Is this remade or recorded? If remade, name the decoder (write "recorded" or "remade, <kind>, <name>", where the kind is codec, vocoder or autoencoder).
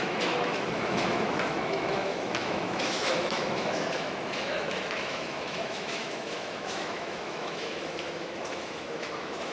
remade, autoencoder, DAC-VAE